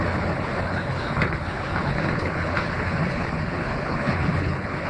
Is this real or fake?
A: fake